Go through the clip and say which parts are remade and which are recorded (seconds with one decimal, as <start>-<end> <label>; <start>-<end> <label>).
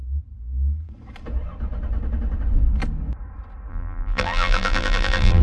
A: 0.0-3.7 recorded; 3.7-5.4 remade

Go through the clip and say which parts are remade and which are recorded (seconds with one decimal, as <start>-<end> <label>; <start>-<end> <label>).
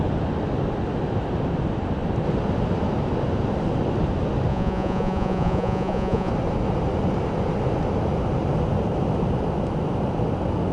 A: 0.0-4.5 recorded; 4.5-6.3 remade; 6.3-10.7 recorded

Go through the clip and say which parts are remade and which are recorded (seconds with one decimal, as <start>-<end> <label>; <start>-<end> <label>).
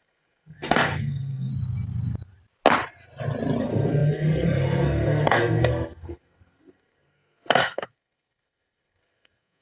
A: 0.0-1.5 remade; 1.5-3.6 recorded; 3.6-9.6 remade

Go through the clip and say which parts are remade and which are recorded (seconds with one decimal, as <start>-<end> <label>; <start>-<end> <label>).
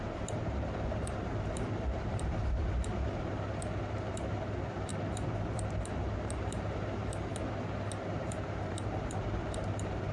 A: 0.0-4.9 remade; 4.9-5.5 recorded; 5.5-7.3 remade; 7.3-8.0 recorded; 8.0-10.1 remade